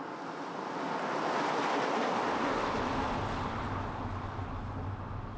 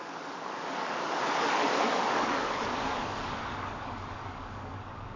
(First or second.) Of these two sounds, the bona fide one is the first